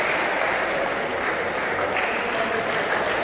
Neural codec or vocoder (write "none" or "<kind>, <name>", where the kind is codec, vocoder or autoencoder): none